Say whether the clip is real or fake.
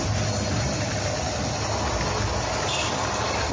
real